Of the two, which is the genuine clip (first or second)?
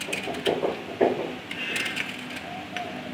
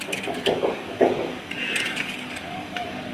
first